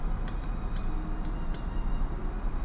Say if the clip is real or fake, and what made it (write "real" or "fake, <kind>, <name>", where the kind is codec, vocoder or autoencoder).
real